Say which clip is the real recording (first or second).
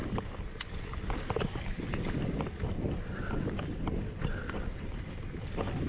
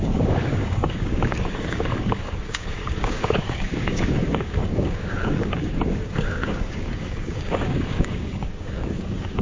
first